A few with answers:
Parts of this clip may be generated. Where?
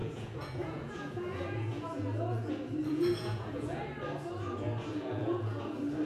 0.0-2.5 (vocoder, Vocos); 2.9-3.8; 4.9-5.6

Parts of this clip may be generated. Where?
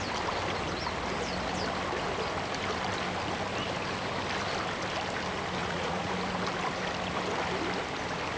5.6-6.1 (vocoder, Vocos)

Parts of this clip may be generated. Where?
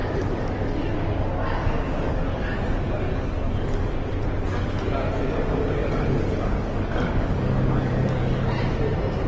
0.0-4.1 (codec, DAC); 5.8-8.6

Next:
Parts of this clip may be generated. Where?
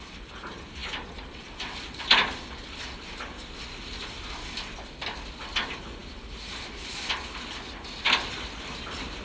none